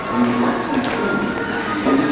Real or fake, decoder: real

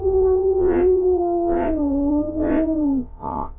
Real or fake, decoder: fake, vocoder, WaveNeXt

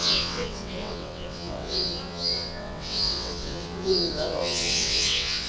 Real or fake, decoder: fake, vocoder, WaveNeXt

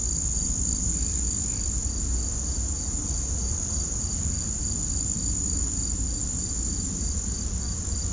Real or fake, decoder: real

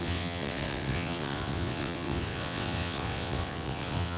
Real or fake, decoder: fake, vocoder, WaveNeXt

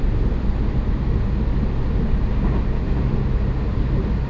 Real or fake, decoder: real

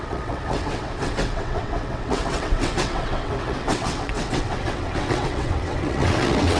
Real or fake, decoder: fake, vocoder, WaveNeXt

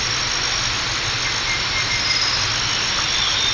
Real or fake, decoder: real